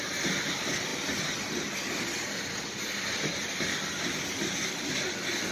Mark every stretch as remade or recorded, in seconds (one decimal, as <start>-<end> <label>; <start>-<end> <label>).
0.0-5.5 recorded